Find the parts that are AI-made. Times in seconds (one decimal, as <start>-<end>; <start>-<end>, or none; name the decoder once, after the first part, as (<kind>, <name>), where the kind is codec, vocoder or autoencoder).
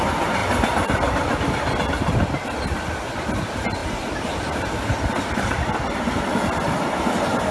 3.8-4.8 (vocoder, BigVGAN v2)